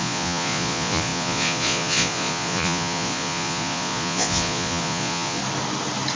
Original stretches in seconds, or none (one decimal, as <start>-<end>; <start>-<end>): 5.4-6.2